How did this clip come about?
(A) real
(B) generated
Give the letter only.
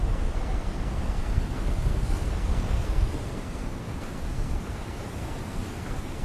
B